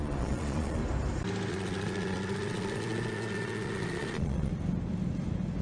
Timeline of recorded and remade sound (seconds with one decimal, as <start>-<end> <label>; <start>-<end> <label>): 0.0-0.8 remade; 0.8-1.5 recorded; 1.5-4.5 remade; 4.5-5.6 recorded